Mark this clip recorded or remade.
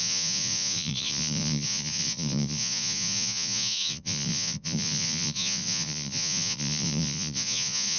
remade